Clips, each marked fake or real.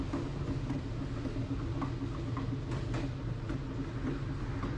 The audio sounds real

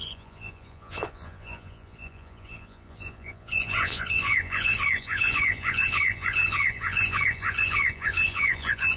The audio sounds fake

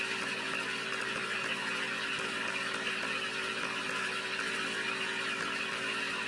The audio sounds real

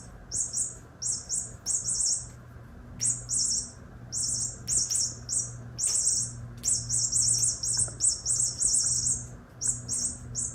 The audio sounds real